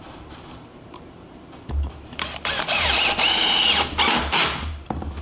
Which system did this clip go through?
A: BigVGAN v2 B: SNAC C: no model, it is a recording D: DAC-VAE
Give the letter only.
A